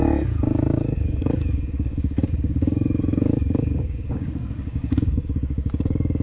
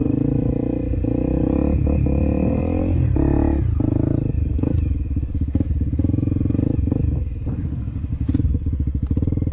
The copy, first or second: first